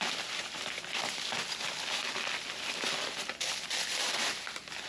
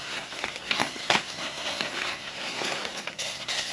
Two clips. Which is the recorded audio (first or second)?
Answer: first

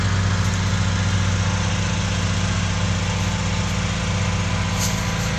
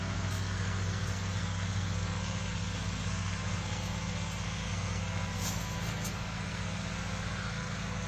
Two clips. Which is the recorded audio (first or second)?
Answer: first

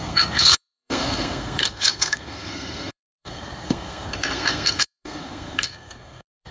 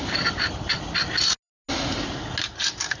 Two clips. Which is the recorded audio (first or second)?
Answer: second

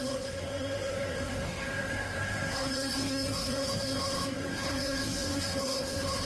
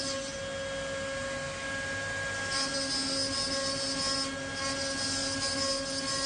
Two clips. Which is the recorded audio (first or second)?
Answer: second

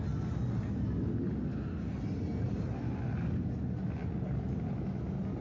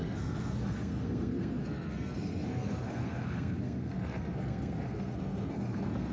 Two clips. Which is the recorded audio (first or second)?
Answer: first